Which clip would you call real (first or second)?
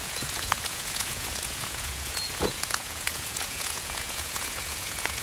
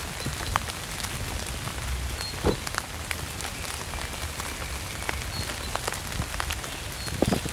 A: second